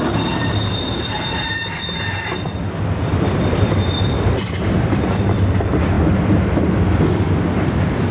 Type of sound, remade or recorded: remade